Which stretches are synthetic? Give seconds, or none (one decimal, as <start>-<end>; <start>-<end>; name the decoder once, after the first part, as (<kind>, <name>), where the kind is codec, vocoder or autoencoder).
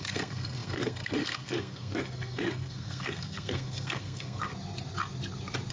0.0-4.5 (codec, SNAC)